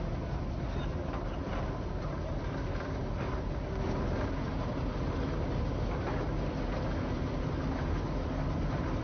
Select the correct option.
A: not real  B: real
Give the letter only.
B